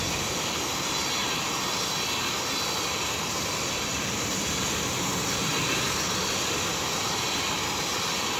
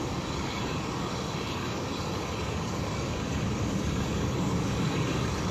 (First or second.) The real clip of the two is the first